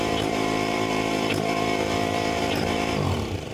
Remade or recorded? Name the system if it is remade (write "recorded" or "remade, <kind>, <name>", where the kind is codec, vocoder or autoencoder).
remade, vocoder, BigVGAN v2